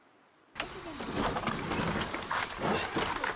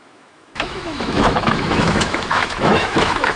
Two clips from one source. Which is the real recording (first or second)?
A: first